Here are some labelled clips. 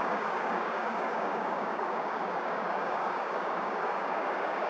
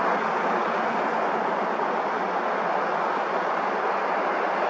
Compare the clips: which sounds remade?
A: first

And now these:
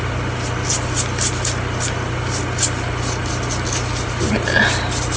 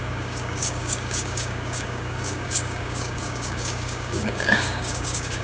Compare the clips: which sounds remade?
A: second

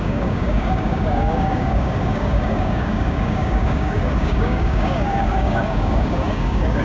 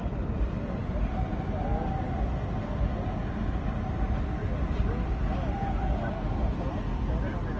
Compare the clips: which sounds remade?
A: first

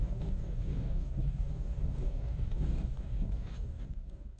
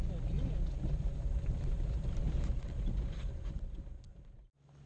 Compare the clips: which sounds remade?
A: first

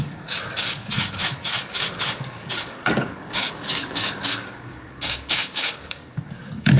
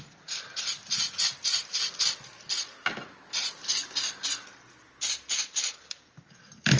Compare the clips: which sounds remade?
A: first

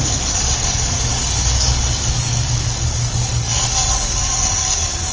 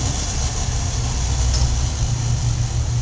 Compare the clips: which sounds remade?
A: first